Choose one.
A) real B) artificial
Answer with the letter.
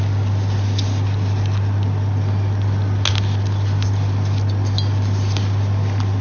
A